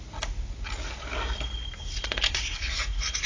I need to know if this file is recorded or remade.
recorded